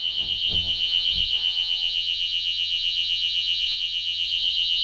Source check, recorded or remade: remade